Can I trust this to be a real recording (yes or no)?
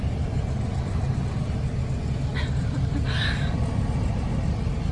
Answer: yes